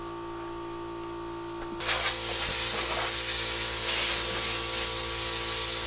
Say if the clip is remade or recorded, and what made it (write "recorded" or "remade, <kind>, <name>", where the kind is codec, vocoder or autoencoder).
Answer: recorded